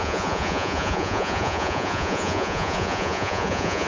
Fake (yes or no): yes